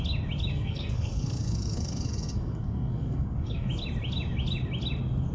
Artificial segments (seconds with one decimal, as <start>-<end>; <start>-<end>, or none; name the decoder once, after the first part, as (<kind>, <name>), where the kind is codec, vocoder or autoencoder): 0.5-3.7 (codec, SNAC)